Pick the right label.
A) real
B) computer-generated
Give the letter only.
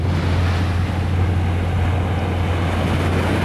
A